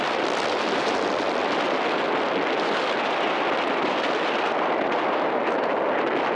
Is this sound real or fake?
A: real